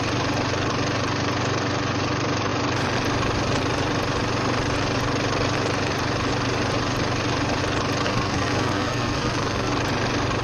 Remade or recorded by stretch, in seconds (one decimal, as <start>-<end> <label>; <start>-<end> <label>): 0.0-8.0 recorded; 8.0-9.7 remade; 9.7-10.4 recorded